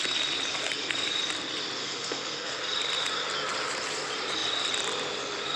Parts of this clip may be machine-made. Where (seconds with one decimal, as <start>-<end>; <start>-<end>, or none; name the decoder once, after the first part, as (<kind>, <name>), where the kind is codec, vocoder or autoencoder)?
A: 1.8-2.6 (codec, SNAC)